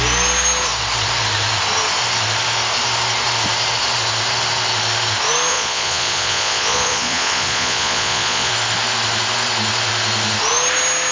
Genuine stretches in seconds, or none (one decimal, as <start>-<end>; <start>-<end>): 0.0-5.5; 8.5-11.1